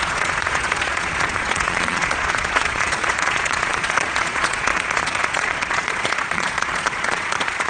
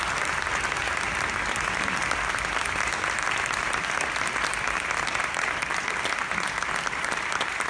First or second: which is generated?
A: first